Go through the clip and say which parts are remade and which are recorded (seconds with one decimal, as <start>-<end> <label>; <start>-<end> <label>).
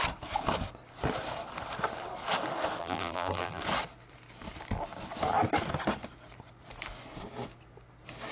0.0-2.8 recorded; 2.8-3.6 remade; 3.6-8.3 recorded